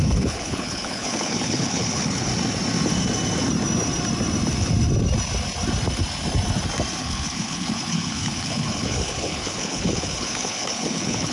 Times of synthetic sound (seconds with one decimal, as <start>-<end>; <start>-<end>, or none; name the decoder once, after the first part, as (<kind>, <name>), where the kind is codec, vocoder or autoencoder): 0.0-2.3 (codec, HILCodec); 7.0-11.3

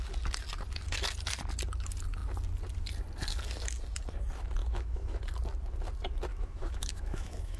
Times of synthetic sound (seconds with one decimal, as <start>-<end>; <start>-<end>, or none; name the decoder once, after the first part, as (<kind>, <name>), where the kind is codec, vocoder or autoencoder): 4.6-5.2 (autoencoder, DAC-VAE); 6.3-7.6

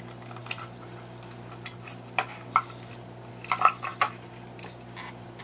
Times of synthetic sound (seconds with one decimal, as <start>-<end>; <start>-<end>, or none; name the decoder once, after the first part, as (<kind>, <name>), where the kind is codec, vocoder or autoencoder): none

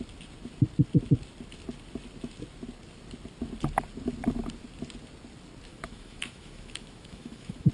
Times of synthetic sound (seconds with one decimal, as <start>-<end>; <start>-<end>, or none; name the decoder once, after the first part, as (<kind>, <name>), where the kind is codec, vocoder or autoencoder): 5.7-7.7 (autoencoder, DAC-VAE)

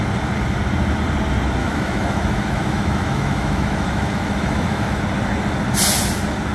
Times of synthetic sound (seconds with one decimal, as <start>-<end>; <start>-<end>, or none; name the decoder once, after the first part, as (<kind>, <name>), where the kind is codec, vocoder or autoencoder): 1.6-5.0 (autoencoder, DAC-VAE)

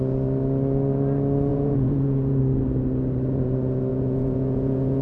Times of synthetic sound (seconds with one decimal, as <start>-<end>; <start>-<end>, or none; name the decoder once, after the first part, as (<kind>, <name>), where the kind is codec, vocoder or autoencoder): 1.5-2.4 (vocoder, Vocos); 3.9-5.0

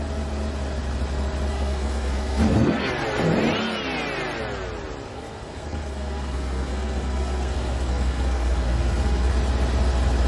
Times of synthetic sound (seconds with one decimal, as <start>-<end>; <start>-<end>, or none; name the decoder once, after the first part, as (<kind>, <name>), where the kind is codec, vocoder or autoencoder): 1.5-2.9 (codec, SNAC); 5.1-9.3